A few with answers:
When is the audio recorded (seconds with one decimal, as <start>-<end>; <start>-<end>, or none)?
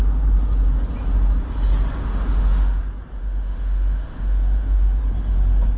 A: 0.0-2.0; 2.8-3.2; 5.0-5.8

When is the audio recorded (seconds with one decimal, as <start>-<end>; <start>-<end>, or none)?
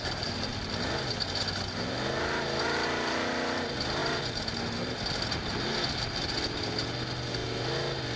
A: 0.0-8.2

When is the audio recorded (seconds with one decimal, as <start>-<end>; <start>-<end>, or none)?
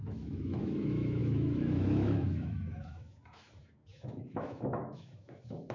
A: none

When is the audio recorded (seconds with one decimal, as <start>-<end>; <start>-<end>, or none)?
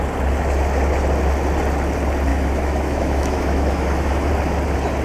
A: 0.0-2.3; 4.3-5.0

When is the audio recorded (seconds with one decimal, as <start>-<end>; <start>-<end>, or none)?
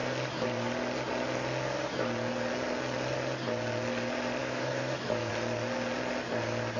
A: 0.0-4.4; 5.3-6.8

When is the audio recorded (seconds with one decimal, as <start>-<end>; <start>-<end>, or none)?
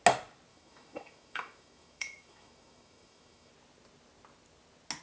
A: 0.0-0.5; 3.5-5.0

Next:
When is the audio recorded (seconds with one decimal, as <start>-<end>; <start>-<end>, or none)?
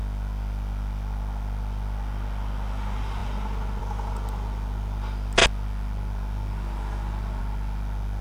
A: 0.0-8.2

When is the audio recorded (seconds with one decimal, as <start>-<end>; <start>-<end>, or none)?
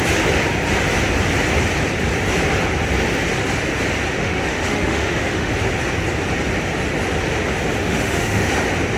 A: 0.0-4.2; 5.5-7.8; 8.5-9.0